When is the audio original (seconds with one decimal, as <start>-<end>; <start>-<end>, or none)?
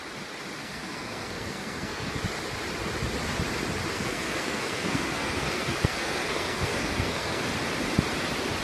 0.0-0.6; 2.2-3.9; 7.4-8.6